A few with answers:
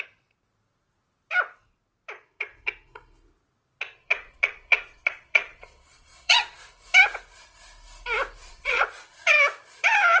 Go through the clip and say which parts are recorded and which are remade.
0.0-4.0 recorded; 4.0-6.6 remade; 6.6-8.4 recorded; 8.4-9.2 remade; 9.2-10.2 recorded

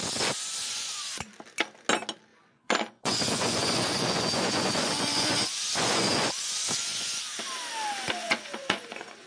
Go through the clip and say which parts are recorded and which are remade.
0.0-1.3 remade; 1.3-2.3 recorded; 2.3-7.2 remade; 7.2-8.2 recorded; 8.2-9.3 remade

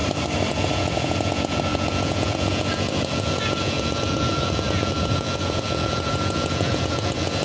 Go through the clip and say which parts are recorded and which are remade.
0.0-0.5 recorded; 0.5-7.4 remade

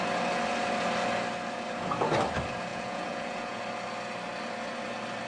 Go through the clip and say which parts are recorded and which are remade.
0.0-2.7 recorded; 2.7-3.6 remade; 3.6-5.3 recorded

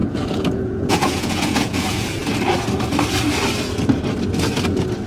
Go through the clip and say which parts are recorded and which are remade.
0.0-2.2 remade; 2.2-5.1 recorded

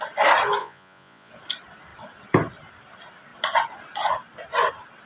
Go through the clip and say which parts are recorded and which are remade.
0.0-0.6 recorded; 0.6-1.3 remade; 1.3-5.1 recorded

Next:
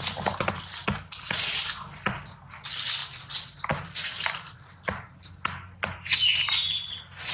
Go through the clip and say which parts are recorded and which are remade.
0.0-7.3 recorded

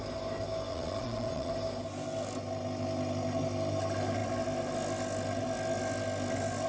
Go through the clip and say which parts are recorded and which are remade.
0.0-0.7 recorded; 0.7-1.5 remade; 1.5-6.7 recorded